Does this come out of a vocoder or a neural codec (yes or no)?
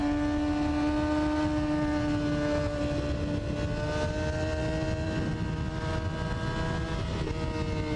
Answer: no